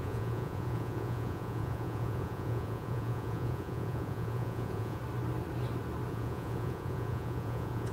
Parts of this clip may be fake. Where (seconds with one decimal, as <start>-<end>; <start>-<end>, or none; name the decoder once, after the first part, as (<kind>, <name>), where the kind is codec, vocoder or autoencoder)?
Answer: 0.0-5.0 (vocoder, Vocos); 6.1-7.9